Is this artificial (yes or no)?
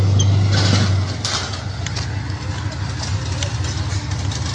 no